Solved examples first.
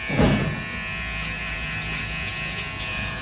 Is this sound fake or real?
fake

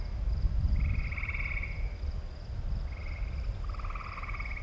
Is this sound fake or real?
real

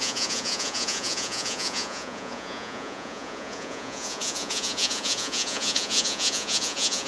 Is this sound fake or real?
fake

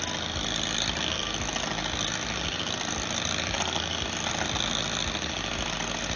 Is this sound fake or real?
real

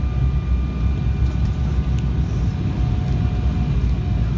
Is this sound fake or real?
real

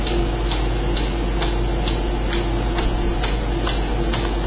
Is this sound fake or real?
real